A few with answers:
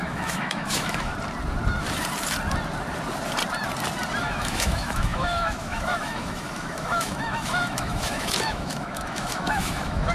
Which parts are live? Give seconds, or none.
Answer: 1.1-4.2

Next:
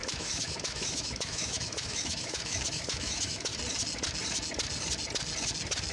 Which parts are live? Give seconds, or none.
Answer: 3.5-5.9

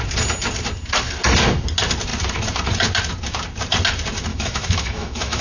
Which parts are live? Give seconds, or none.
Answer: 0.0-4.3

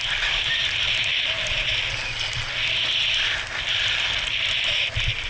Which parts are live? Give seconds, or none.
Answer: 0.0-5.3